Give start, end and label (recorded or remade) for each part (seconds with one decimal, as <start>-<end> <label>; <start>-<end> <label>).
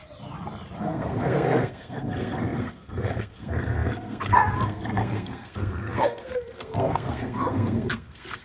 0.0-0.8 recorded; 0.8-8.4 remade